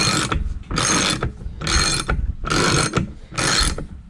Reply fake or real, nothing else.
real